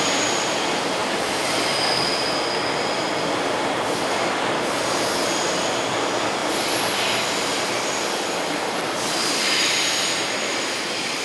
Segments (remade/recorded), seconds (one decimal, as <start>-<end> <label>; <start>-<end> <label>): 0.0-11.2 recorded